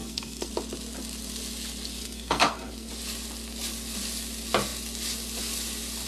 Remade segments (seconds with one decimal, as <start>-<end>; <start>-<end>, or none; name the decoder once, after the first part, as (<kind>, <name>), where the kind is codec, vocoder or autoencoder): 0.0-0.5 (codec, SNAC); 2.0-2.9